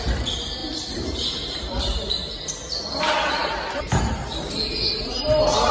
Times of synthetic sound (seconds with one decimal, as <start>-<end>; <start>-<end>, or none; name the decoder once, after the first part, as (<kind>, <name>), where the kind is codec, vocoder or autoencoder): 0.6-3.0 (vocoder, BigVGAN v2)